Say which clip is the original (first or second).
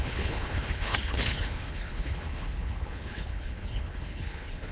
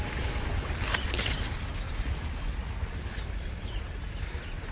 second